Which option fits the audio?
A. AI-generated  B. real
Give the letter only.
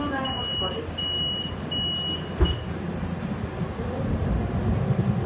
B